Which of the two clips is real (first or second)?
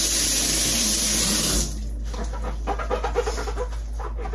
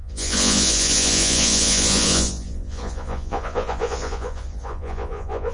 first